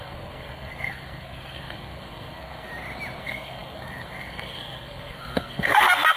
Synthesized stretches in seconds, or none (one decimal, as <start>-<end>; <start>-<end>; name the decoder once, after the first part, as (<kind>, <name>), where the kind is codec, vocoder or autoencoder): 0.0-2.7 (codec, SNAC); 3.2-6.2